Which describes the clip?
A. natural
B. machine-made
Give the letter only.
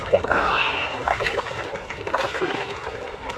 B